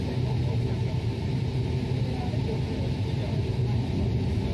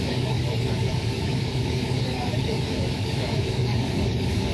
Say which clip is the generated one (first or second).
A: second